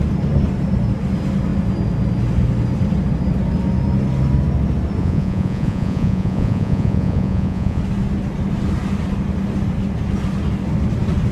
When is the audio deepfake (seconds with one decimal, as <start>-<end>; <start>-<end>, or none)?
5.0-7.8